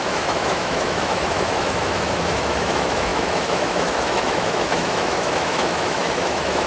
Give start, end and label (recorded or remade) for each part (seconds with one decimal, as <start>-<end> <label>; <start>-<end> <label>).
0.0-6.7 remade